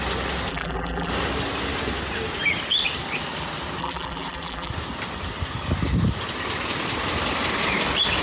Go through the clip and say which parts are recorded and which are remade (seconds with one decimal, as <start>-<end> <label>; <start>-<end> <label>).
0.0-0.5 recorded; 0.5-1.1 remade; 1.1-3.8 recorded; 3.8-4.7 remade; 4.7-8.2 recorded